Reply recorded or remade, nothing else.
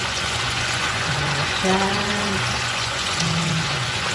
remade